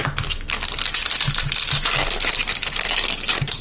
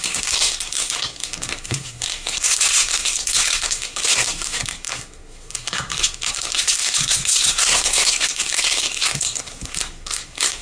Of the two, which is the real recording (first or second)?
first